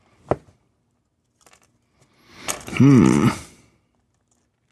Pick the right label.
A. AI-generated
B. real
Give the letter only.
B